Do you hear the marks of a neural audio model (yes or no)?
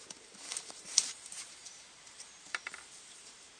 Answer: yes